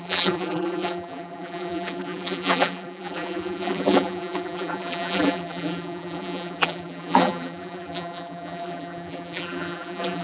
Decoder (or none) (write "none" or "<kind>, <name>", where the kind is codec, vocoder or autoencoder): vocoder, BigVGAN v2